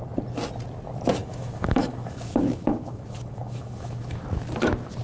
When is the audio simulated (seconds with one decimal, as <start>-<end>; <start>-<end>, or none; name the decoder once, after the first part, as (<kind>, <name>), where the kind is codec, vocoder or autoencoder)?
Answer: 1.2-4.2 (autoencoder, DAC-VAE)